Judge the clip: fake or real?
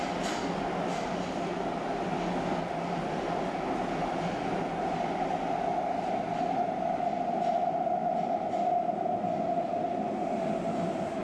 real